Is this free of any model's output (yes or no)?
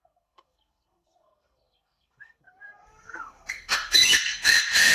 no